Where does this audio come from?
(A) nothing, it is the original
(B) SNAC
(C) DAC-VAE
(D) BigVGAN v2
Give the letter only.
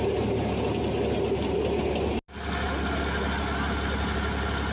A